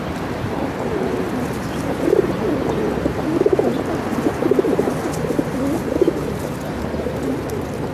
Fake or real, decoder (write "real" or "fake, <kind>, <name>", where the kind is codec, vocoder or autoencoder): real